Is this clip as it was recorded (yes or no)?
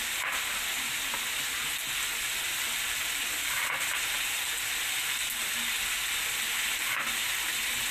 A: yes